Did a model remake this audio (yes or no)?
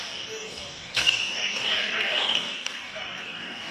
yes